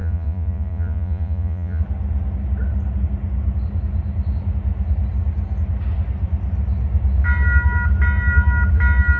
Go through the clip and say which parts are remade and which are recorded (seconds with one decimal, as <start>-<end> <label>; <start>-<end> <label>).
0.0-1.8 remade; 1.8-9.2 recorded